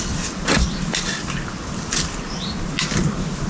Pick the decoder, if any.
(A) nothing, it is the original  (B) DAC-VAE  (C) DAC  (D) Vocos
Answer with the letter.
A